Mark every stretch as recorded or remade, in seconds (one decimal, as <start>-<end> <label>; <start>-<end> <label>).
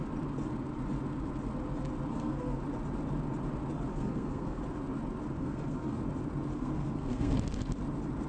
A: 0.0-2.1 recorded; 2.1-2.6 remade; 2.6-3.9 recorded; 3.9-4.6 remade; 4.6-5.4 recorded; 5.4-6.0 remade; 6.0-6.5 recorded; 6.5-7.3 remade; 7.3-8.3 recorded